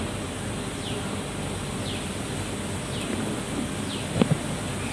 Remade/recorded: recorded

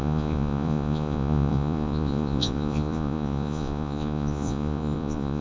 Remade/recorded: remade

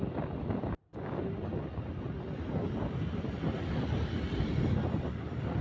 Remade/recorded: recorded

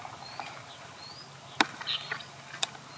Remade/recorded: recorded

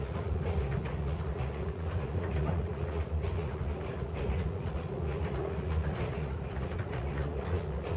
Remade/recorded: remade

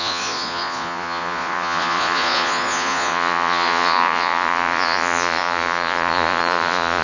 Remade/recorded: remade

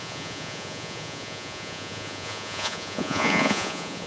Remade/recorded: remade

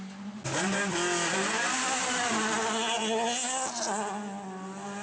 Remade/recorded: recorded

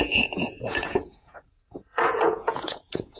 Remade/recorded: remade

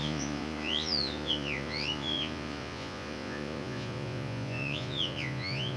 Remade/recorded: remade